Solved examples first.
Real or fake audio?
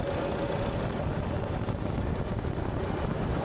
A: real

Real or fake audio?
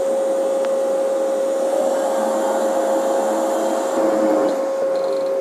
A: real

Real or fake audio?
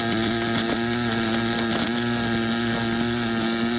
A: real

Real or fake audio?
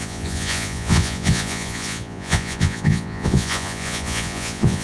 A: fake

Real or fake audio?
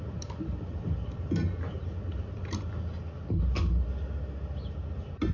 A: real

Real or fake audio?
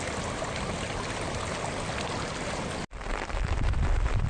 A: real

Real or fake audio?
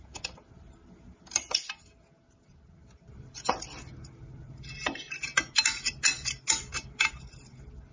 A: real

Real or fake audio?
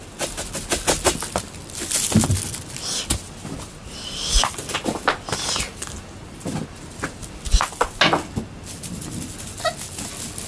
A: real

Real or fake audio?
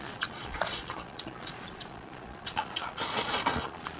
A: fake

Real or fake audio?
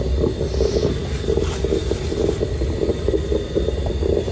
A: real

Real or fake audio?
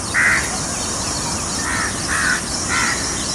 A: real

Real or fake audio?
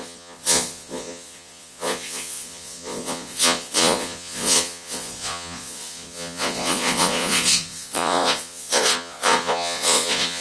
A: fake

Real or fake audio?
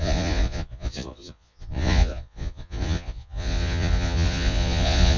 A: fake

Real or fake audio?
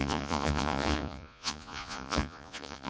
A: fake